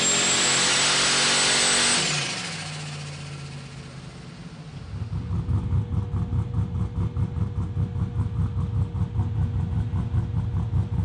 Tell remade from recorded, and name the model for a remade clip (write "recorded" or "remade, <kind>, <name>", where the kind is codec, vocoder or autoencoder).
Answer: recorded